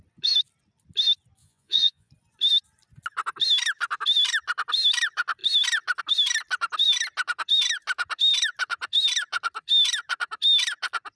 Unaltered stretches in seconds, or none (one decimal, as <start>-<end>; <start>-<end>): 0.0-1.4; 2.1-11.2